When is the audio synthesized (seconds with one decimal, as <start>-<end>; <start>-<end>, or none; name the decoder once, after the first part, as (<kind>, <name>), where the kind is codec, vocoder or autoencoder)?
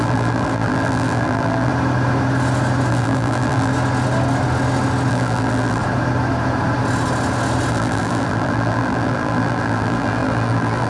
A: 0.0-1.7 (vocoder, BigVGAN v2); 2.9-3.7; 5.1-5.8; 7.7-10.9